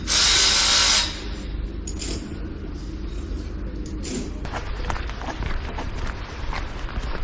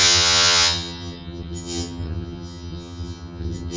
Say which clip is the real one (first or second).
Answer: first